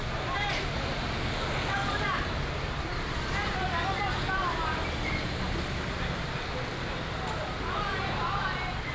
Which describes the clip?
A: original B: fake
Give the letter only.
A